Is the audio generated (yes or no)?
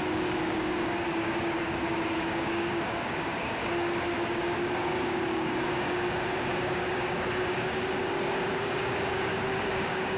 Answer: yes